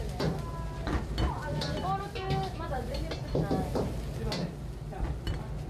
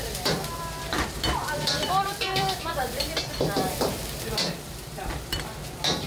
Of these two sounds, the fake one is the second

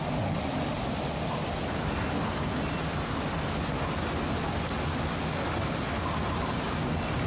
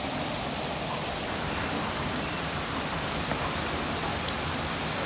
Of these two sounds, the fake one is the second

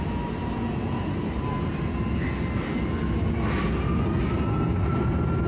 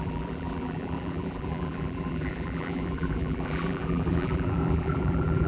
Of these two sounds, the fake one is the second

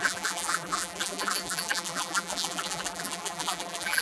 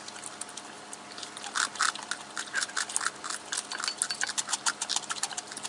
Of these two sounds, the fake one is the first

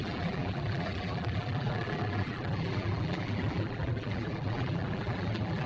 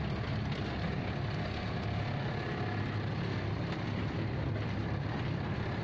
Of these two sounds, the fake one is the first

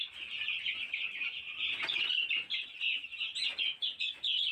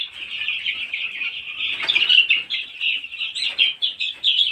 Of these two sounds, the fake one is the second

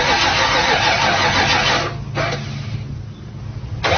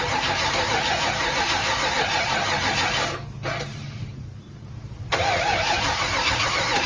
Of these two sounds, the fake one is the second